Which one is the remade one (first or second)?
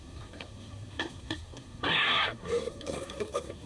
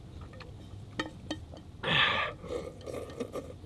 first